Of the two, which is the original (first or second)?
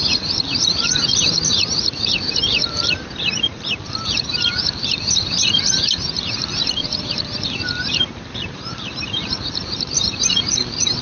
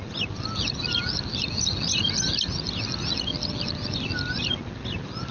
second